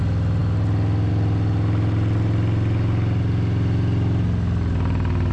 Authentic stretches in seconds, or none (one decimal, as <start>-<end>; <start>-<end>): 0.0-5.3